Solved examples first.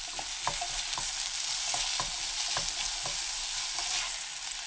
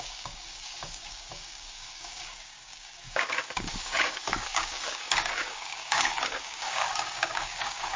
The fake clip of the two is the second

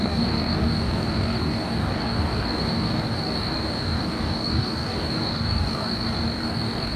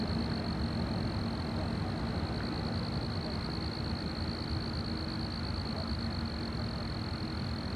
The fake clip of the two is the first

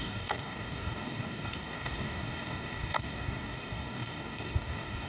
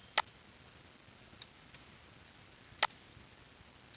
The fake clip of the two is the first